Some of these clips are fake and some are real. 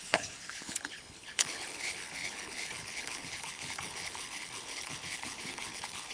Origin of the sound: fake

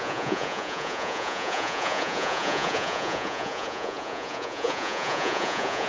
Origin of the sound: fake